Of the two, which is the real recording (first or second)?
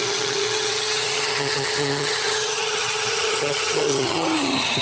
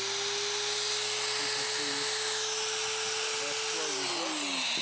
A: second